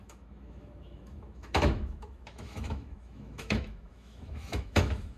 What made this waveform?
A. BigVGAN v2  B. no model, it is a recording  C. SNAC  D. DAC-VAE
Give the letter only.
D